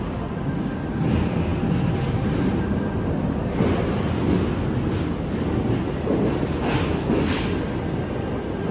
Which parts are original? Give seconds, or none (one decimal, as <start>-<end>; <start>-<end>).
0.0-8.7